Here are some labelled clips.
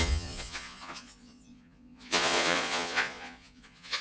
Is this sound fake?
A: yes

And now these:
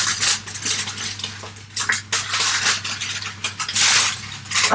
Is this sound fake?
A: no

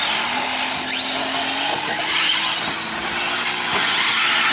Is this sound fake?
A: no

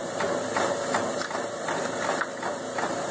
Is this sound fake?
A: no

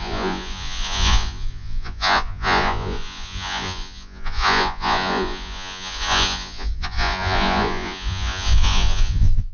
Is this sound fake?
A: yes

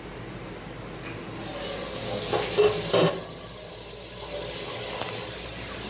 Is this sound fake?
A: no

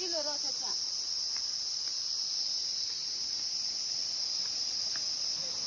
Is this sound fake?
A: no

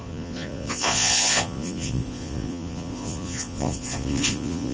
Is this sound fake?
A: yes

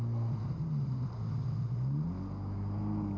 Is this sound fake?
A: no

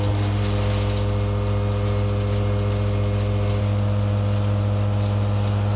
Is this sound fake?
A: no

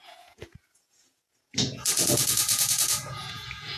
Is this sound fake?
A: yes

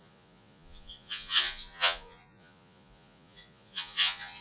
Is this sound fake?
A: yes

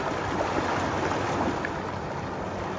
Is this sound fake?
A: no